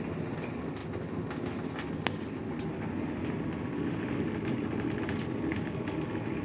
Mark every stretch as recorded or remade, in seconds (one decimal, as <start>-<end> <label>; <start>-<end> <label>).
0.0-6.4 recorded

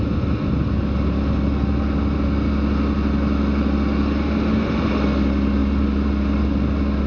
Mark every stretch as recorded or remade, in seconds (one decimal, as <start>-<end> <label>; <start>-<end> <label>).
0.0-5.6 recorded; 5.6-6.1 remade; 6.1-7.1 recorded

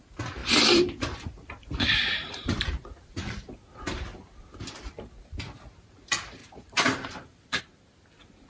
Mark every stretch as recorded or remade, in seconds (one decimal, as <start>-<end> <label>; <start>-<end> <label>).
0.0-0.4 recorded; 0.4-3.5 remade; 3.5-6.4 recorded; 6.4-7.6 remade; 7.6-8.5 recorded